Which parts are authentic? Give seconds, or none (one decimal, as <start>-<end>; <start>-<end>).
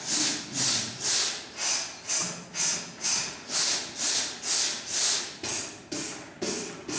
0.0-7.0